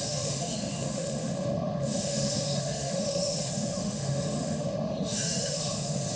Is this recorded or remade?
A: remade